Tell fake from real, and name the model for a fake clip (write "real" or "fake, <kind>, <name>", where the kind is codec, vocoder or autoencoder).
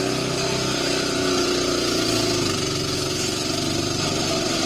real